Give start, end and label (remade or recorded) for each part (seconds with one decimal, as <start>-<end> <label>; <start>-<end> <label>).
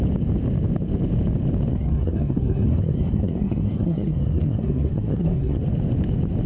0.0-1.7 recorded; 1.7-5.6 remade; 5.6-6.5 recorded